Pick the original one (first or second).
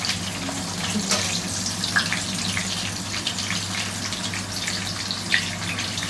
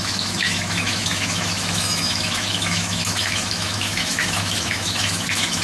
first